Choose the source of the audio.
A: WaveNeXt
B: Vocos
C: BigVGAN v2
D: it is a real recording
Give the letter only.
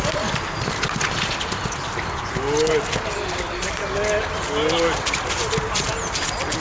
D